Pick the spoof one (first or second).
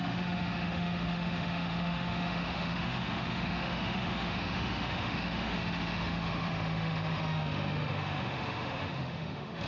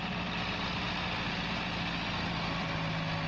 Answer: first